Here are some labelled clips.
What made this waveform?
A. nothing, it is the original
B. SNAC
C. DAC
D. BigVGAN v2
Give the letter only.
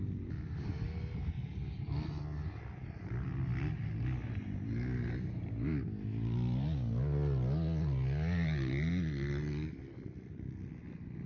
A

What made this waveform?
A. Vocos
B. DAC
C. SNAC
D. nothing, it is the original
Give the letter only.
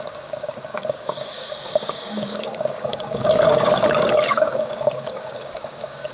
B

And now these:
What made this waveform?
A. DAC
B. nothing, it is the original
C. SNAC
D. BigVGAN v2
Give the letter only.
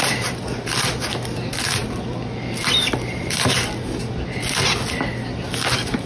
B